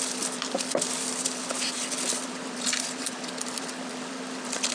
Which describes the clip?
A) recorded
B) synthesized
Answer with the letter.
B